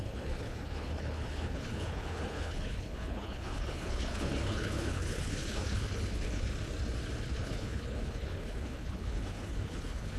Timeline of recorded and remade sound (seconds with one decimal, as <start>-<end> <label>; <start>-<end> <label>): 0.0-6.5 remade; 6.5-7.2 recorded; 7.2-10.2 remade